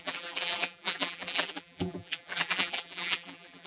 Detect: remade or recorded remade